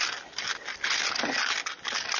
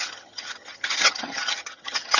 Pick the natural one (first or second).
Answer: first